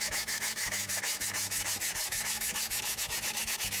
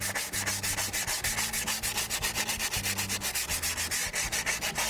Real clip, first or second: second